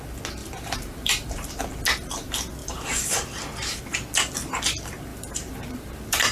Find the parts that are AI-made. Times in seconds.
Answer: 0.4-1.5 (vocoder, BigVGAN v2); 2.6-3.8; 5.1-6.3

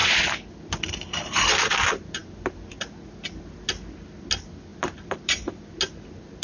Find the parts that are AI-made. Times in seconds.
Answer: 4.7-5.6 (vocoder, BigVGAN v2)

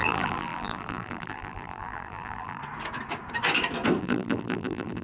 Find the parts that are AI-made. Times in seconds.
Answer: 0.0-2.6 (vocoder, BigVGAN v2); 4.0-5.0

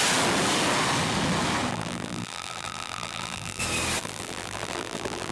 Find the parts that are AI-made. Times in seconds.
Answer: 1.7-3.6 (vocoder, BigVGAN v2); 4.0-5.3

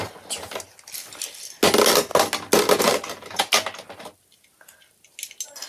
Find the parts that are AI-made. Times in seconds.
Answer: none

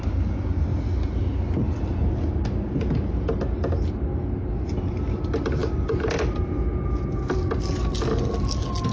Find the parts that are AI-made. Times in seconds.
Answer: none